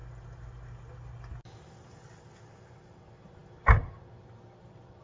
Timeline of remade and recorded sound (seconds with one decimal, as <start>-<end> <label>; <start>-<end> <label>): 0.0-5.0 recorded